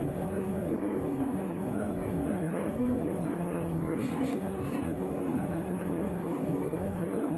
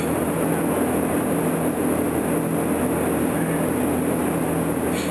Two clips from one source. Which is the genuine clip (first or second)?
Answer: second